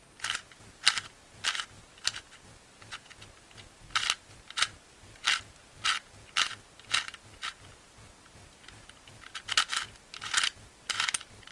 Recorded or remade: recorded